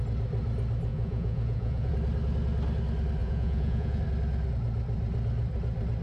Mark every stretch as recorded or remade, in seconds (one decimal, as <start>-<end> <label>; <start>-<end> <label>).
0.0-0.9 recorded; 0.9-1.9 remade; 1.9-3.2 recorded; 3.2-4.0 remade; 4.0-6.0 recorded